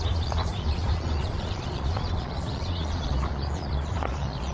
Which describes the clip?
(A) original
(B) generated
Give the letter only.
B